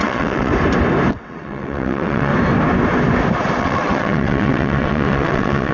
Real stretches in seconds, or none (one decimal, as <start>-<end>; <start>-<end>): 0.5-1.1; 2.3-3.6